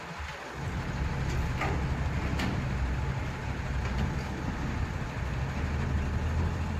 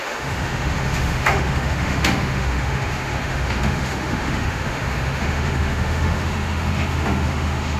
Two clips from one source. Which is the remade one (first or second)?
second